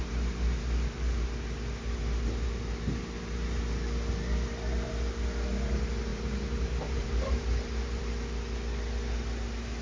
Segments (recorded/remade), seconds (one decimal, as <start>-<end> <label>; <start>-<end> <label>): 0.0-6.1 recorded; 6.1-8.0 remade; 8.0-9.8 recorded